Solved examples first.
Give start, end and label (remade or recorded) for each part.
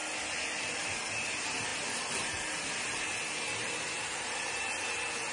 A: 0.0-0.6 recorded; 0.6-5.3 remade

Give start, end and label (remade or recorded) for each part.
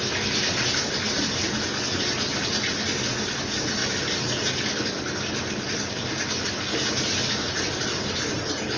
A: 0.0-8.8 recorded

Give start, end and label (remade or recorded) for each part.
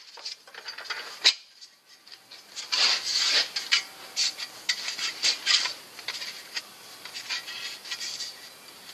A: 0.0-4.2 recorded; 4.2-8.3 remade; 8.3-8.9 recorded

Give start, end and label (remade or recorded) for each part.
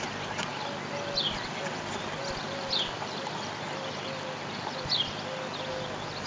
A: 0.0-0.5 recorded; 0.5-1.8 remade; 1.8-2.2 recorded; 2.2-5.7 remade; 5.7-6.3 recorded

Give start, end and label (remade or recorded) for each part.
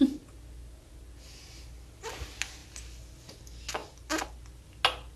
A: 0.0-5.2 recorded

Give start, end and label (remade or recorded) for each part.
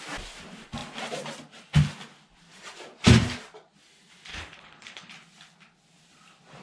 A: 0.0-4.3 recorded; 4.3-5.1 remade; 5.1-6.6 recorded